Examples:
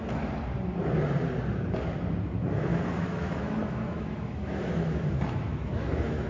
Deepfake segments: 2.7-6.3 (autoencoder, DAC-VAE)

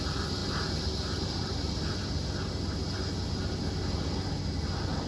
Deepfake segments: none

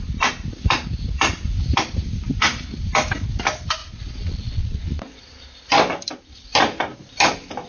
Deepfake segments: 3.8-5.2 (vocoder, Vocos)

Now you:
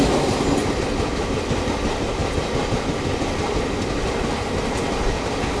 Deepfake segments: none

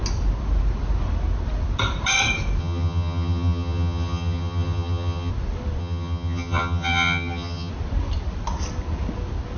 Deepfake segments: 2.6-5.3 (vocoder, HiFi-GAN); 5.8-7.7

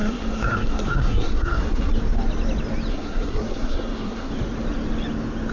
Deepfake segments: 0.0-1.9 (codec, SNAC); 2.9-4.3